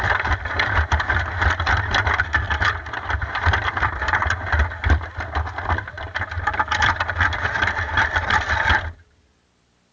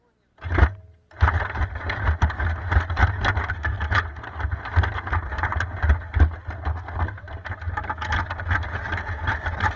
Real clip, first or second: second